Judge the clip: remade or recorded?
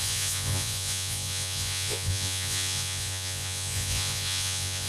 remade